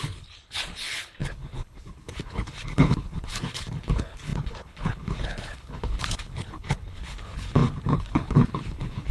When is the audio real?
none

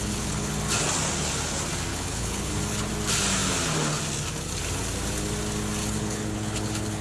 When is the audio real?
0.5-1.9; 2.9-5.8

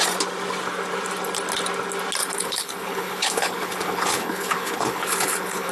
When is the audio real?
0.0-2.2

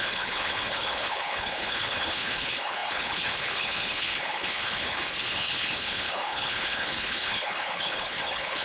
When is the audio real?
none

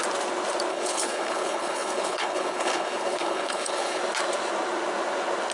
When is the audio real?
0.0-0.7; 4.0-5.5

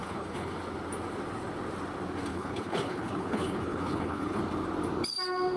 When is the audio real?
0.5-2.3; 4.4-5.6

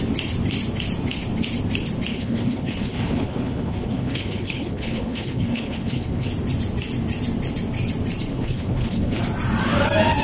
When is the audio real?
0.0-2.1; 6.3-8.3; 9.2-10.2